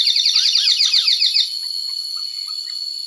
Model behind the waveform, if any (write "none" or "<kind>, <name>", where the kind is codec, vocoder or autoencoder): none